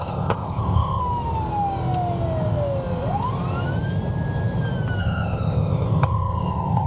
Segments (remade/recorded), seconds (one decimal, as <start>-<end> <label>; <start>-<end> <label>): 0.0-1.0 remade; 1.0-5.0 recorded; 5.0-6.9 remade